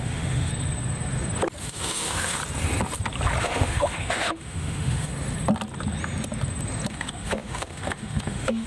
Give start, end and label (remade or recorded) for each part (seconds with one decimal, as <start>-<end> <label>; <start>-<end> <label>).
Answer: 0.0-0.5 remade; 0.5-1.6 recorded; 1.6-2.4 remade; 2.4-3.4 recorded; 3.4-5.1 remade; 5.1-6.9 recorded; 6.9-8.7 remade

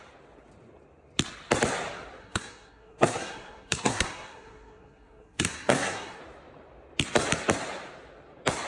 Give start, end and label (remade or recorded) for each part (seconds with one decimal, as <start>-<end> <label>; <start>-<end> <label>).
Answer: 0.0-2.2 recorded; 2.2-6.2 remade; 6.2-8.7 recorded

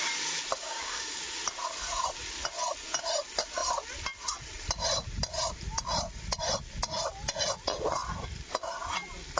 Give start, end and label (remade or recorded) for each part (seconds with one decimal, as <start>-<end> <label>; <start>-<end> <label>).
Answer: 0.0-0.6 recorded; 0.6-1.2 remade; 1.2-9.4 recorded

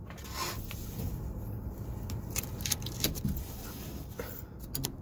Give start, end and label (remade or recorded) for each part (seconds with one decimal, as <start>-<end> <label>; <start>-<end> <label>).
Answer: 0.0-5.0 recorded

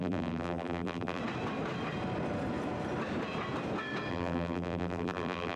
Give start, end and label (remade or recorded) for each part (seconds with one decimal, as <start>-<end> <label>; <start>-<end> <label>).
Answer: 0.0-1.2 remade; 1.2-4.1 recorded; 4.1-5.6 remade

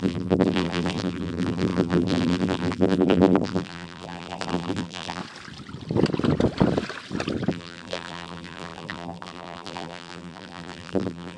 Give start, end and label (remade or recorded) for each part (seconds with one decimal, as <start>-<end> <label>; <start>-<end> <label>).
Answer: 0.0-5.2 remade; 5.2-7.5 recorded; 7.5-11.4 remade